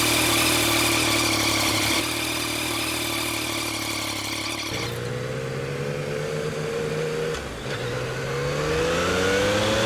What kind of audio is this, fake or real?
real